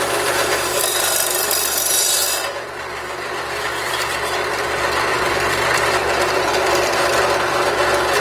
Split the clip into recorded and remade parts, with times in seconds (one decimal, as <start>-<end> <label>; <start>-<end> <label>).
0.0-5.1 recorded; 5.1-6.9 remade; 6.9-8.2 recorded